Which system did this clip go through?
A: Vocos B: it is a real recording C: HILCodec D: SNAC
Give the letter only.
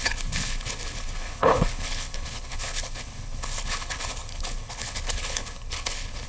C